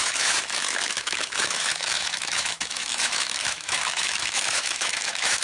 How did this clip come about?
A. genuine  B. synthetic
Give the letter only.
B